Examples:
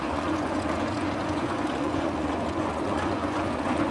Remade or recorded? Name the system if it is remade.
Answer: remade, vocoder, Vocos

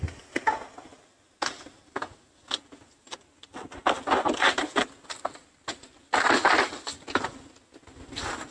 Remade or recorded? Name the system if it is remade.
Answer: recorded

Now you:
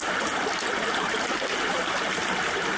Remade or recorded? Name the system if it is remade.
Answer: recorded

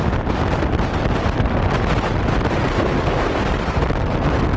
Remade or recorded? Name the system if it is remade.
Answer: recorded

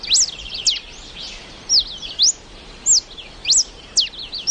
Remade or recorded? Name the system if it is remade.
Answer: recorded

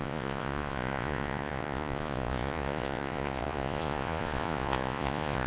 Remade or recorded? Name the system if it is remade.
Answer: remade, vocoder, Vocos